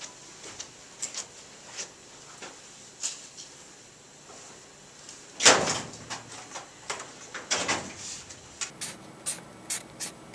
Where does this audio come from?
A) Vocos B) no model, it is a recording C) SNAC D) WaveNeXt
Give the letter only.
B